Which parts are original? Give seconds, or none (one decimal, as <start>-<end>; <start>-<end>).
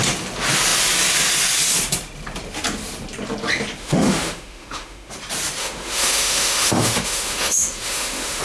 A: 0.0-3.8; 5.1-5.6